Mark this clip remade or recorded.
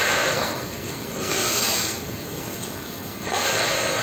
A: remade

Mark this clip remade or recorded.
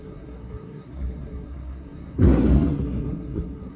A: remade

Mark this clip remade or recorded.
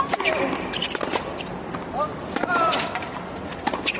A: recorded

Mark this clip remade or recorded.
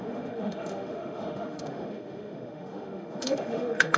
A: remade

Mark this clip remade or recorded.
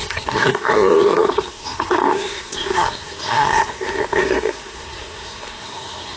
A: remade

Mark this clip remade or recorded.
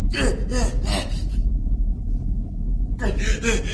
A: recorded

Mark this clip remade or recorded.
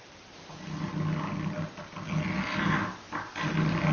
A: recorded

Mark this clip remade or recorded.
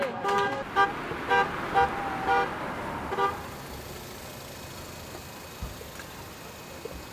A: recorded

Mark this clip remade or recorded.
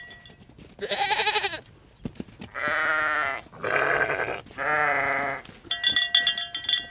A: recorded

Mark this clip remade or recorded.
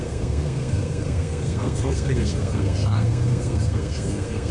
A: remade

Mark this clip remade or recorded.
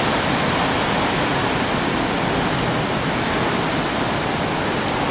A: recorded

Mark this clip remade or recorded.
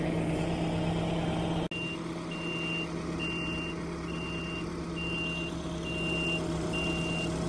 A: recorded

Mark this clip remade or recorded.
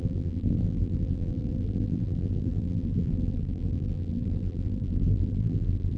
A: remade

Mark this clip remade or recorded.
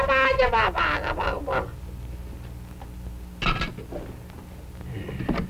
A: recorded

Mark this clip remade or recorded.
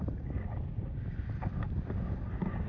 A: recorded